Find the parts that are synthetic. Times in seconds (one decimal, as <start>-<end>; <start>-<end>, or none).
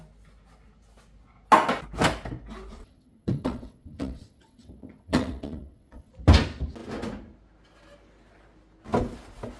2.7-6.1